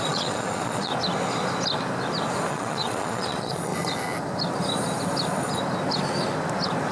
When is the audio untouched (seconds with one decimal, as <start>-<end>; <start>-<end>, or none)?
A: 0.9-2.5; 3.7-6.9